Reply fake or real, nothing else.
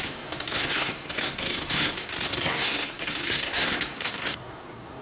fake